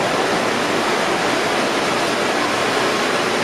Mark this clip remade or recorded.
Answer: recorded